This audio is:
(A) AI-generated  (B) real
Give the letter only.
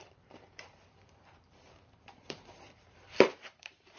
A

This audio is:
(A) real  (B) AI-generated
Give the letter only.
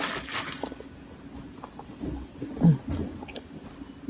A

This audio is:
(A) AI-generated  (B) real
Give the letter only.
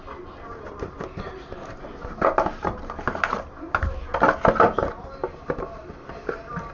B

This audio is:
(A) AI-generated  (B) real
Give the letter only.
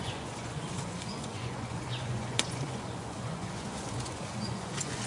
A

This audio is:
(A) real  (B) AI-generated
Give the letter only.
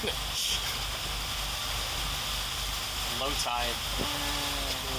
A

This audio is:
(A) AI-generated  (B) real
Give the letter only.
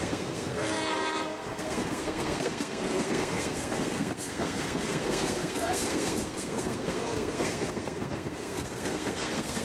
A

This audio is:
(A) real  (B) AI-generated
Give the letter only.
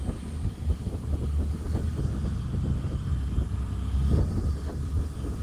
A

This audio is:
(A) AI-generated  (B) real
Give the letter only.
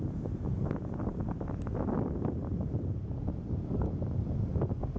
B